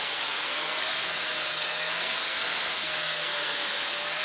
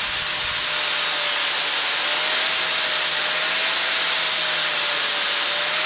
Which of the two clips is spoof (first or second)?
first